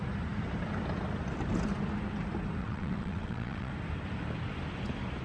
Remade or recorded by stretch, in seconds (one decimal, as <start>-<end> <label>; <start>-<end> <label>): 0.0-2.6 recorded; 2.6-3.7 remade; 3.7-5.2 recorded

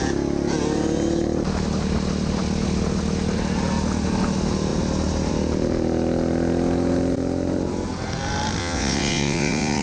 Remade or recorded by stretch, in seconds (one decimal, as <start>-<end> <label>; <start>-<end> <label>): 0.0-8.6 recorded; 8.6-9.8 remade

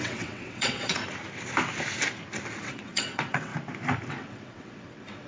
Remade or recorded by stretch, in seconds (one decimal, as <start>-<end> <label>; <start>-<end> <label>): 0.0-1.0 remade; 1.0-2.6 recorded; 2.6-3.5 remade; 3.5-4.1 recorded; 4.1-5.3 remade

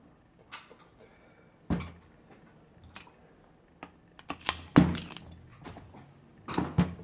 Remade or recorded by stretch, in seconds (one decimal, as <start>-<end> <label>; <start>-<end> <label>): 0.0-5.5 recorded; 5.5-6.0 remade; 6.0-7.0 recorded